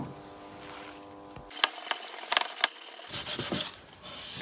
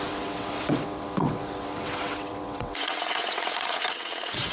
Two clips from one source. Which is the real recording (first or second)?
first